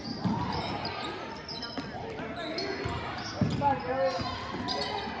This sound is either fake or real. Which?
real